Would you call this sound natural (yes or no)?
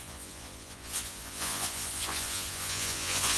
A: no